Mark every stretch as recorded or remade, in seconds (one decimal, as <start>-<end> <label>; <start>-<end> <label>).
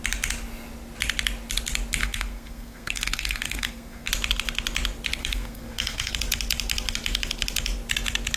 0.0-2.0 recorded; 2.0-4.1 remade; 4.1-5.2 recorded; 5.2-6.1 remade; 6.1-8.4 recorded